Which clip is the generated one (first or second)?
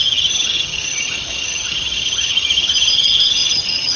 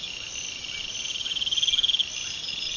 first